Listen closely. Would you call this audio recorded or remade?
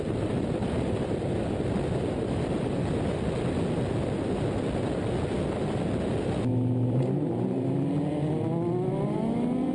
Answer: recorded